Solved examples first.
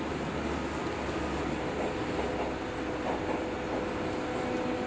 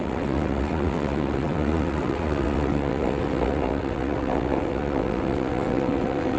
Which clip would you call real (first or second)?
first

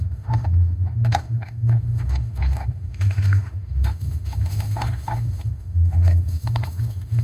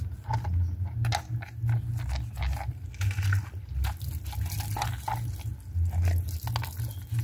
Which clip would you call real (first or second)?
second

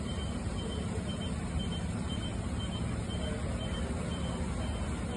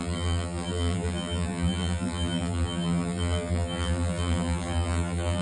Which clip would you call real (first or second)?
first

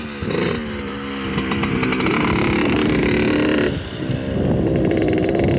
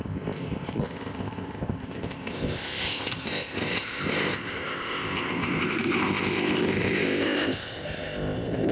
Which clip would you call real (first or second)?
first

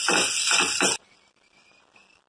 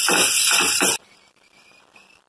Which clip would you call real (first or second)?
first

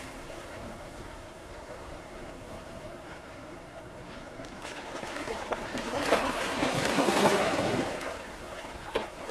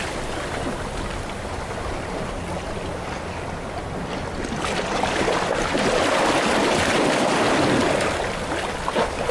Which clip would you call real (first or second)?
second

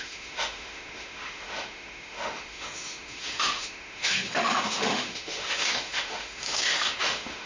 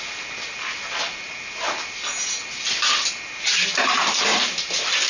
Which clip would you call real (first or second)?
second